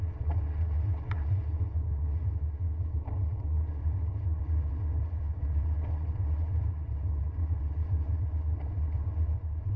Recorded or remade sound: remade